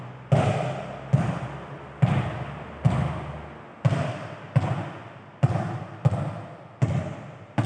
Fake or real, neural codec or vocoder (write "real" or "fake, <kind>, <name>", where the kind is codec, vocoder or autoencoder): real